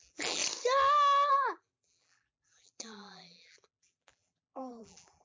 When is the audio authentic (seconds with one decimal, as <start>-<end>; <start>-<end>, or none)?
0.4-1.3